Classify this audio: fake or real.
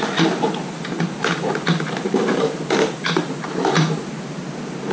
real